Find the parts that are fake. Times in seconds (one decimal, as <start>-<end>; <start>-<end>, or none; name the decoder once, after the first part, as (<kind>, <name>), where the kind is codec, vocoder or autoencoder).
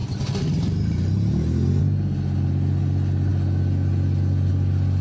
none